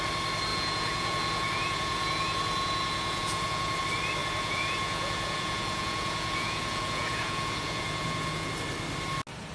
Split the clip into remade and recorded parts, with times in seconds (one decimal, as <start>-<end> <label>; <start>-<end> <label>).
0.0-0.5 recorded; 0.5-3.8 remade; 3.8-4.2 recorded; 4.2-8.5 remade; 8.5-9.5 recorded